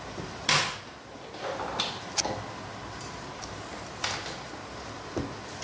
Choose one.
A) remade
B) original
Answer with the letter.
B